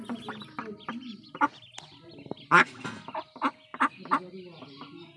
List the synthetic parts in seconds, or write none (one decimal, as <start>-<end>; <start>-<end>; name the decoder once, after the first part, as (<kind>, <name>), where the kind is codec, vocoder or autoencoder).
none